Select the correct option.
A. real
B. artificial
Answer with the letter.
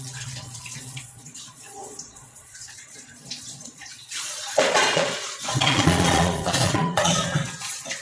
B